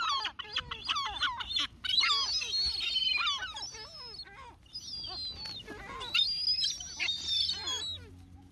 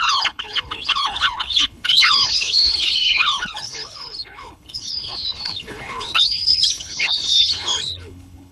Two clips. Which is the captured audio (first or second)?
first